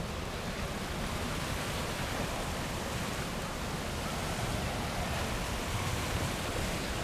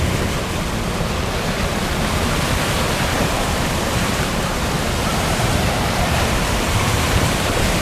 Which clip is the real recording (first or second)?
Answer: first